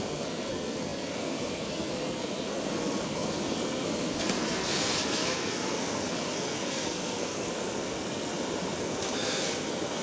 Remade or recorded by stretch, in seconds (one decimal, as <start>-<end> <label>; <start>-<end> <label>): 0.0-8.3 remade; 8.3-8.8 recorded; 8.8-10.0 remade